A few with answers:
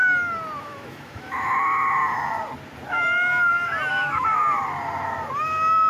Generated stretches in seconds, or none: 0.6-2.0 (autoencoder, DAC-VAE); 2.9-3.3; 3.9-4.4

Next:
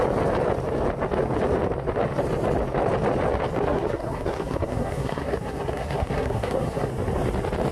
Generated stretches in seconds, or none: 3.6-6.9 (codec, SNAC)

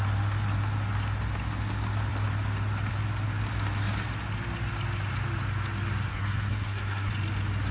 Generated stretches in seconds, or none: 6.1-7.1 (codec, SNAC)